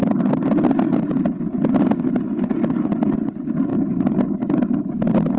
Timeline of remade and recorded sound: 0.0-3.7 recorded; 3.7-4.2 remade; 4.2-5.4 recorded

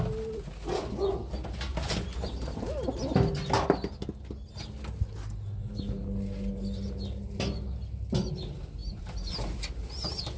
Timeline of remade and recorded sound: 0.0-1.7 recorded; 1.7-2.3 remade; 2.3-8.8 recorded; 8.8-9.3 remade; 9.3-10.4 recorded

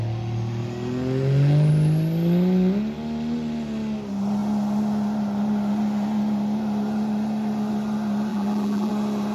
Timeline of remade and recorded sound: 0.0-8.3 recorded; 8.3-8.9 remade; 8.9-9.3 recorded

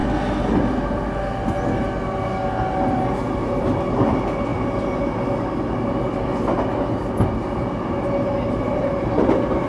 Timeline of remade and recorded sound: 0.0-9.7 recorded

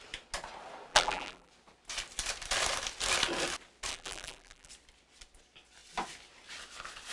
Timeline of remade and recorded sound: 0.0-0.9 recorded; 0.9-1.5 remade; 1.5-3.9 recorded; 3.9-4.7 remade; 4.7-7.1 recorded

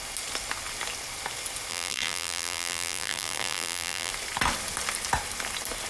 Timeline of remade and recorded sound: 0.0-1.7 recorded; 1.7-4.1 remade; 4.1-5.9 recorded

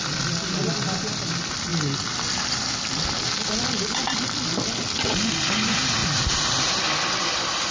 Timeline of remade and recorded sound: 0.0-6.0 remade; 6.0-7.2 recorded; 7.2-7.7 remade

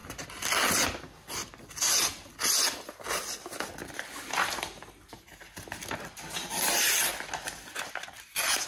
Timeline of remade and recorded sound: 0.0-8.7 recorded